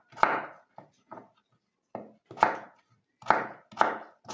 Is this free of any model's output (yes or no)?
yes